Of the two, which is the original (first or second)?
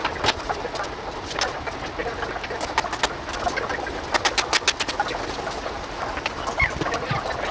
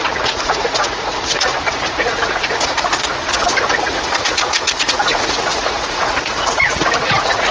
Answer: first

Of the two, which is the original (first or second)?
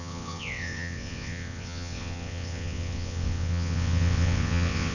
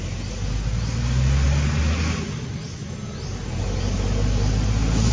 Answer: second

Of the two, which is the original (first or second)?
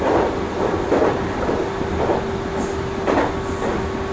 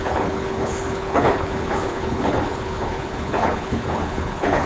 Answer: first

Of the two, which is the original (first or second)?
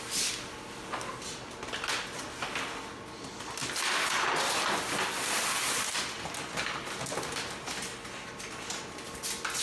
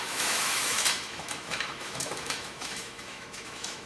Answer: first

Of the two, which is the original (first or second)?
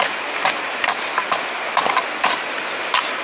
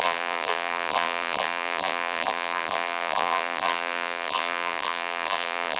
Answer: first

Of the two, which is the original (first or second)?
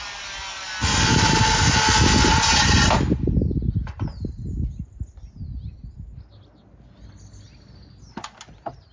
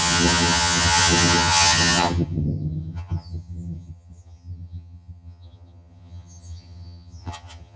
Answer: first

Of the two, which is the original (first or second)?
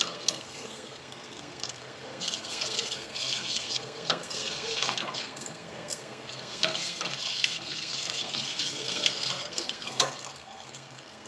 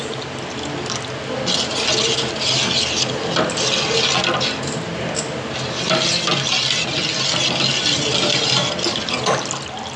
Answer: second